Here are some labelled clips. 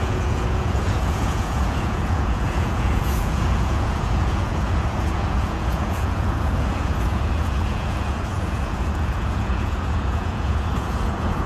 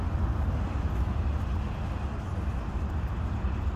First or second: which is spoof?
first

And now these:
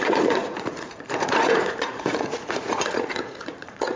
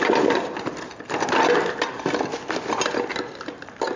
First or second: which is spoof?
first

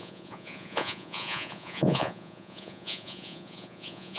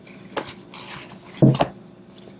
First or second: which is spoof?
first